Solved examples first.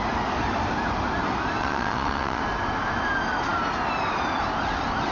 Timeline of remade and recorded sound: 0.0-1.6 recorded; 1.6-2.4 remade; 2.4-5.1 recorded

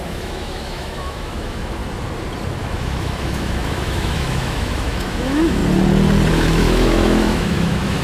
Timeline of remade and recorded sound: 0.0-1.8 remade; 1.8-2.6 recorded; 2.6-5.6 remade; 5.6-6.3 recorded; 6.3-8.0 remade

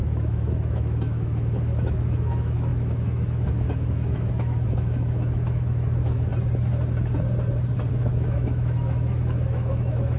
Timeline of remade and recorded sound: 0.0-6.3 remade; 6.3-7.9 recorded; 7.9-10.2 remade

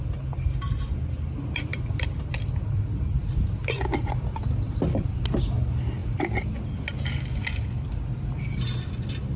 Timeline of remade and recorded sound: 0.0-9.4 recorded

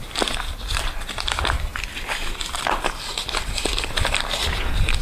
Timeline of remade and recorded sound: 0.0-5.0 recorded